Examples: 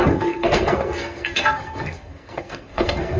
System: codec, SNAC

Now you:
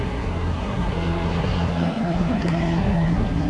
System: codec, SNAC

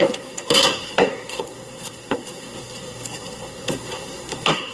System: codec, SNAC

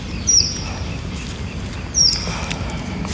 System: none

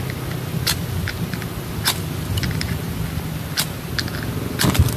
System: none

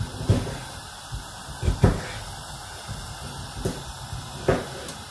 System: none